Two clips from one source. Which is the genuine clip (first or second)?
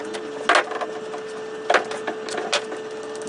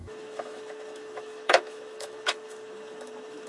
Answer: first